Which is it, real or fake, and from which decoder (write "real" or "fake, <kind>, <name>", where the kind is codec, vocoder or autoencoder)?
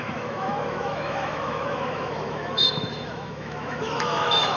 fake, autoencoder, DAC-VAE